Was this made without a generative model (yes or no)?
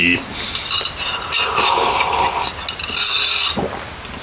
yes